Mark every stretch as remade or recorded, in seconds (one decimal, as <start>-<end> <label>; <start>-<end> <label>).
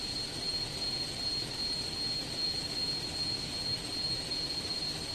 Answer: 0.0-5.1 recorded